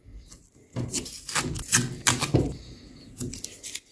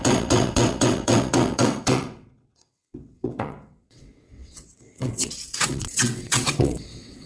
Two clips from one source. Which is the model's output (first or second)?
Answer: second